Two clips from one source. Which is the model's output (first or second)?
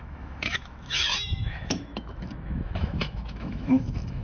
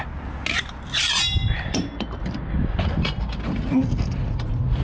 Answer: first